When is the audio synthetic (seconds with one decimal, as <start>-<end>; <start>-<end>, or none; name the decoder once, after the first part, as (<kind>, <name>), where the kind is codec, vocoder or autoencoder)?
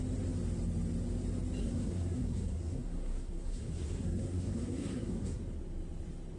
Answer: 1.6-5.4 (codec, SNAC)